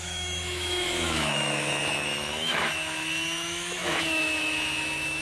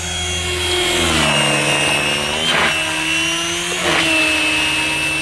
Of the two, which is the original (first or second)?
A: second